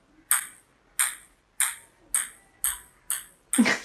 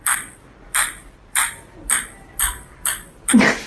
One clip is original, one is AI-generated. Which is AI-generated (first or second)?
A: second